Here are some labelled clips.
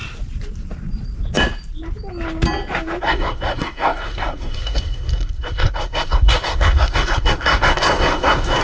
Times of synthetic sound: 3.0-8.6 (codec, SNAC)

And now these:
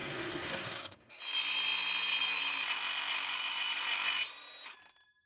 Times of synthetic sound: 0.0-1.2 (codec, SNAC)

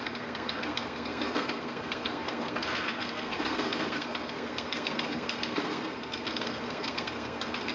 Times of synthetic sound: 0.0-7.7 (codec, SNAC)

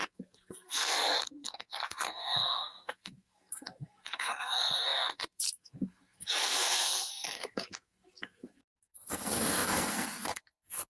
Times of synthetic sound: 0.0-10.9 (codec, SNAC)

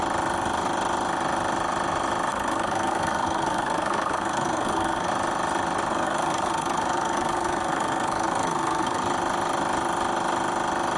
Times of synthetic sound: 2.3-5.1 (codec, SNAC); 5.9-9.0